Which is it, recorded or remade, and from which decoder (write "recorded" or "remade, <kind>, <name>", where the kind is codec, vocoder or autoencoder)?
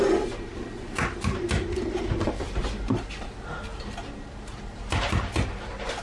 recorded